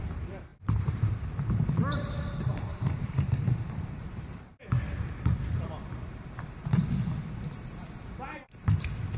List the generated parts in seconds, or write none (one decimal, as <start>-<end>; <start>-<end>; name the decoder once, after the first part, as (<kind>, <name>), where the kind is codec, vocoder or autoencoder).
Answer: 0.5-1.2 (vocoder, BigVGAN v2); 2.7-4.8